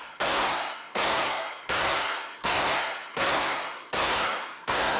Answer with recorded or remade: remade